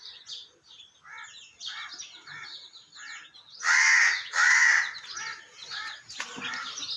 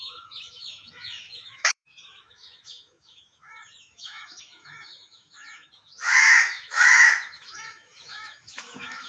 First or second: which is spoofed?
second